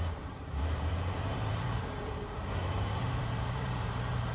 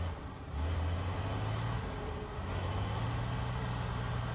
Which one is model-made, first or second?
first